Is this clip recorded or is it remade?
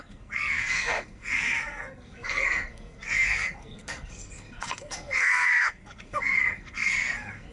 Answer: remade